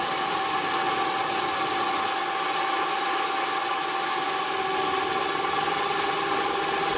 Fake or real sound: real